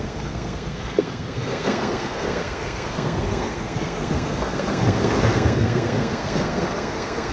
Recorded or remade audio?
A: remade